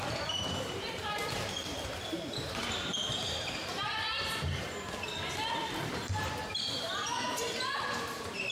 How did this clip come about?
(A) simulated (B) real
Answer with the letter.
A